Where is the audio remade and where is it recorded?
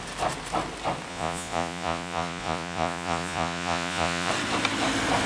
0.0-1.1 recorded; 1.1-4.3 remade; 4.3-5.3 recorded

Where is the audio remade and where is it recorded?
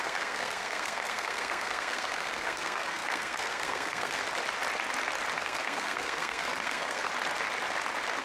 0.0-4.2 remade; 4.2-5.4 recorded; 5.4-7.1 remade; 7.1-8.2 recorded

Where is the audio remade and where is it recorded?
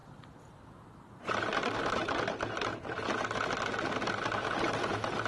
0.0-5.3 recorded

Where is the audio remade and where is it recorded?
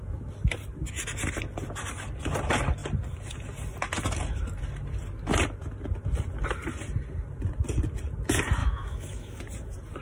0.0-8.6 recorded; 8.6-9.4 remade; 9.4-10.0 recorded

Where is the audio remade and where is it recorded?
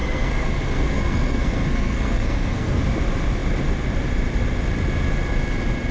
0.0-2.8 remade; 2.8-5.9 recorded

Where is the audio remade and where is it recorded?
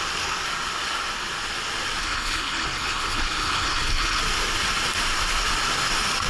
0.0-2.0 recorded; 2.0-4.2 remade; 4.2-6.3 recorded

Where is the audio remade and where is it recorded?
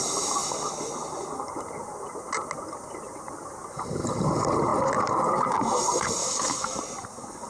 0.0-6.2 recorded; 6.2-6.8 remade; 6.8-7.5 recorded